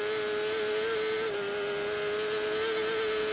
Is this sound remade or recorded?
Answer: recorded